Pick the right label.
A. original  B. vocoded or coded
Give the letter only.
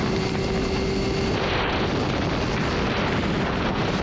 A